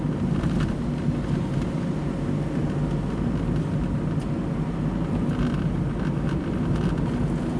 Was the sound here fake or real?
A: real